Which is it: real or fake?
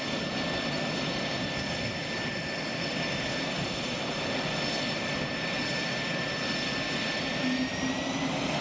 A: real